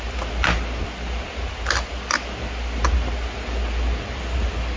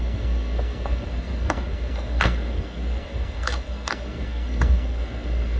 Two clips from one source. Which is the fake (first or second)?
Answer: second